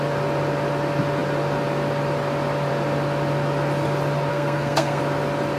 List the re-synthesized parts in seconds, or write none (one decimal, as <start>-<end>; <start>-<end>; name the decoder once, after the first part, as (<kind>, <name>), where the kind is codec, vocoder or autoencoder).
4.3-5.0 (codec, SNAC)